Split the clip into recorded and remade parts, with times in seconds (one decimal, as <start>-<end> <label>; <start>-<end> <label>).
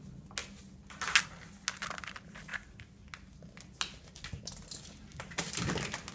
0.0-6.1 recorded